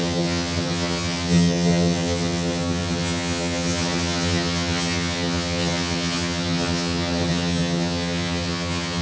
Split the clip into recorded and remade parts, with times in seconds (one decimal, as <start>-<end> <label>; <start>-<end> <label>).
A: 0.0-9.0 remade